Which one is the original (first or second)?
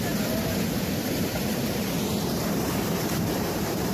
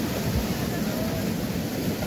second